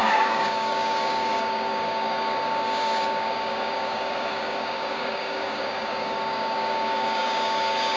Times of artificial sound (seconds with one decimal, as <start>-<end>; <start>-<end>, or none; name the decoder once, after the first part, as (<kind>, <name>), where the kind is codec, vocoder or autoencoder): 0.0-8.0 (codec, DAC)